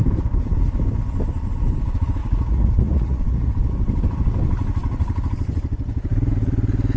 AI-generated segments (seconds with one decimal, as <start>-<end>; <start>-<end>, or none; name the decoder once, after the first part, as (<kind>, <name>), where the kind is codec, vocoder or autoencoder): 2.2-3.5 (vocoder, Vocos)